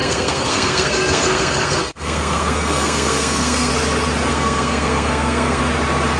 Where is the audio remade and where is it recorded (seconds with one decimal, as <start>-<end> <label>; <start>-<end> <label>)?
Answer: 0.0-3.7 remade; 3.7-4.3 recorded; 4.3-5.6 remade; 5.6-6.2 recorded